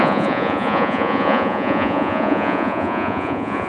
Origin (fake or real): fake